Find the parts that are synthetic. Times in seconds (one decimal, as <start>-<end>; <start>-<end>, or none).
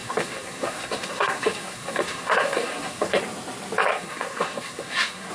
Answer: 0.0-3.2; 3.9-5.3